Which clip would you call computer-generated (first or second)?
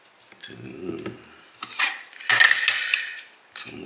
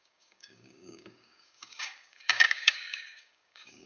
second